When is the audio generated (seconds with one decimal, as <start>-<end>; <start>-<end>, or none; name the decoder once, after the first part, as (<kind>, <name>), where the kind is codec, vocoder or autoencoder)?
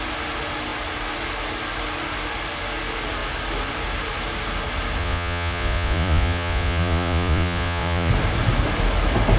5.0-8.1 (vocoder, Vocos)